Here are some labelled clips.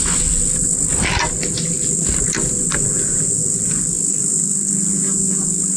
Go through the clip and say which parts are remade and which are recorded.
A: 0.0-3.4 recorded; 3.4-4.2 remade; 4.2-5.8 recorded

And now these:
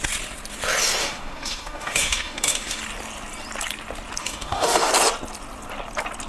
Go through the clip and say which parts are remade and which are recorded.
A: 0.0-1.0 recorded; 1.0-2.8 remade; 2.8-4.2 recorded; 4.2-4.9 remade; 4.9-6.3 recorded